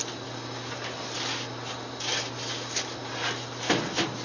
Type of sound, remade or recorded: recorded